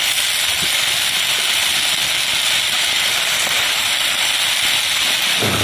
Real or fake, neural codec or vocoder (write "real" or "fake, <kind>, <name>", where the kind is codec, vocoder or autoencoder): real